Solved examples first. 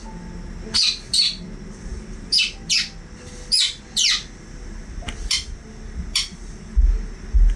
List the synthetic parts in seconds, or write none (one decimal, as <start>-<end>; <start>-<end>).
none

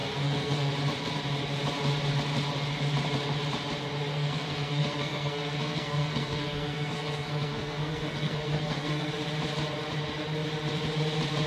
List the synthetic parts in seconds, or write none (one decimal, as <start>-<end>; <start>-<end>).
0.0-0.7; 4.1-9.1

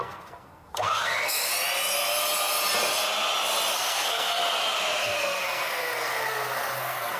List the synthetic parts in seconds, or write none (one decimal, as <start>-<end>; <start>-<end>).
0.0-1.5; 3.7-4.4; 5.0-7.2